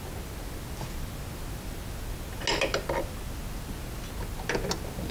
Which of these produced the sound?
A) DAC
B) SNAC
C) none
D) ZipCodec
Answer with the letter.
C